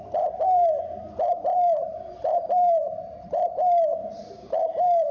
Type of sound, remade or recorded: remade